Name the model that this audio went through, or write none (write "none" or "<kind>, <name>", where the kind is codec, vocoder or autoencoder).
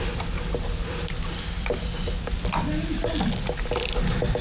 none